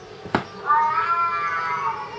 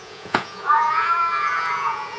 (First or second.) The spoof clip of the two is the second